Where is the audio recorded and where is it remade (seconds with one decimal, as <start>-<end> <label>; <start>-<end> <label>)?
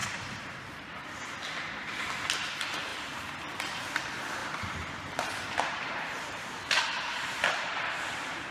0.0-0.9 remade; 0.9-2.9 recorded; 2.9-3.8 remade; 3.8-4.4 recorded; 4.4-8.0 remade; 8.0-8.5 recorded